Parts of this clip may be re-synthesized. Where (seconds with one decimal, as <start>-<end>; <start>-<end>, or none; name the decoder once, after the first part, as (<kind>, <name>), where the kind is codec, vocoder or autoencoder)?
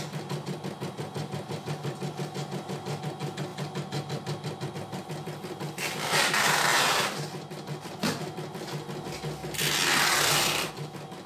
none